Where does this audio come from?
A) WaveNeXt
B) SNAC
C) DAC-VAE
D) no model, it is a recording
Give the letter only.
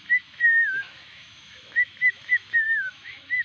C